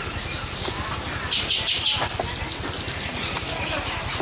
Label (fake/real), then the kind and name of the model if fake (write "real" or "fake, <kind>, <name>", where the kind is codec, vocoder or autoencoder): real